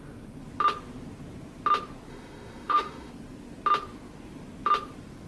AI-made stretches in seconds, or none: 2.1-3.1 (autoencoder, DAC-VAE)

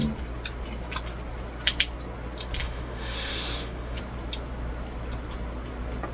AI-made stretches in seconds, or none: 2.6-4.0 (autoencoder, DAC-VAE)

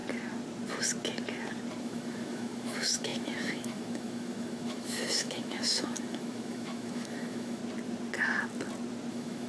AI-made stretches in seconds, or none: 1.8-7.6 (autoencoder, DAC-VAE); 9.1-9.5

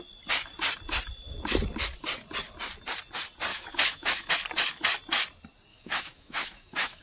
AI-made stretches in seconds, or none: 3.5-4.3 (autoencoder, DAC-VAE); 5.7-7.0

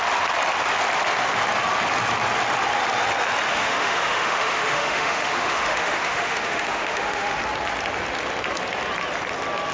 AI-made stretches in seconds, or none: 3.5-7.4 (autoencoder, DAC-VAE)

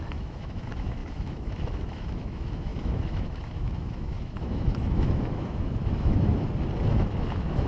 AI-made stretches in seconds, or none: 0.0-6.3 (autoencoder, DAC-VAE); 6.9-7.7